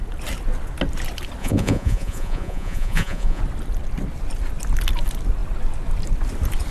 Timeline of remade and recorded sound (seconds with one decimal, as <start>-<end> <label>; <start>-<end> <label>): 0.0-1.4 recorded; 1.4-3.4 remade; 3.4-6.7 recorded